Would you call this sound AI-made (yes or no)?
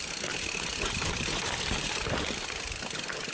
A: yes